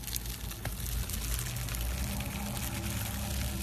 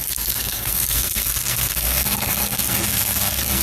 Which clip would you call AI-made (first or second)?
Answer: second